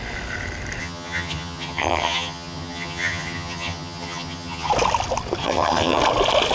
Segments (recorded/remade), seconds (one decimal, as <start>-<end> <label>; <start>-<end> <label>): 0.0-0.8 recorded; 0.8-4.7 remade; 4.7-5.4 recorded; 5.4-6.0 remade; 6.0-6.5 recorded

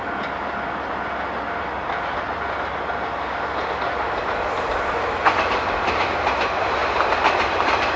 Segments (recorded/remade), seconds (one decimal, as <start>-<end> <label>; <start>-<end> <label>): 0.0-6.8 recorded; 6.8-8.0 remade

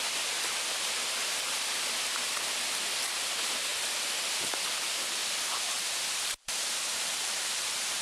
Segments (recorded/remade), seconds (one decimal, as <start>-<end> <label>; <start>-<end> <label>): 0.0-5.2 recorded; 5.2-8.0 remade

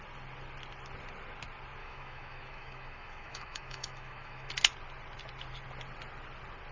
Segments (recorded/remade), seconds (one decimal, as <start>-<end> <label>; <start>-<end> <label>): 0.0-1.8 recorded; 1.8-4.5 remade; 4.5-6.7 recorded

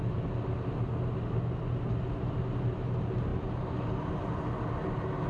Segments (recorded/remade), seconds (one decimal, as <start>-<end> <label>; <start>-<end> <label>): 0.0-5.3 recorded

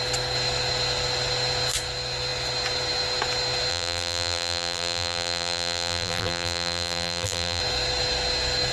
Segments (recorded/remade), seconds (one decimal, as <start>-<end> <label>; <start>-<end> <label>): 0.0-3.7 recorded; 3.7-7.6 remade; 7.6-8.7 recorded

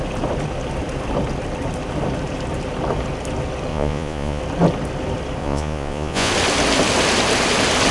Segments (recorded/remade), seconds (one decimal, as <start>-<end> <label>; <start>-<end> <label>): 0.0-3.7 recorded; 3.7-4.4 remade; 4.4-5.4 recorded; 5.4-6.3 remade; 6.3-7.9 recorded